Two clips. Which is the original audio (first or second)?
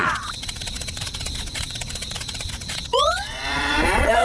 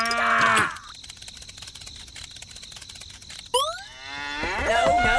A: second